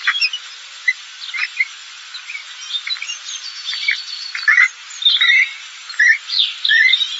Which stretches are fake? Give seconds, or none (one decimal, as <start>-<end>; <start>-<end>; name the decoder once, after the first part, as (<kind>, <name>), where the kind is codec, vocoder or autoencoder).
none